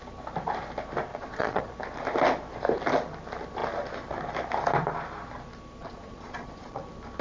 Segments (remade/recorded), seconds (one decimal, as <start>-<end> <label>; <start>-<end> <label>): 0.0-1.1 recorded; 1.1-1.6 remade; 1.6-5.8 recorded; 5.8-6.8 remade; 6.8-7.2 recorded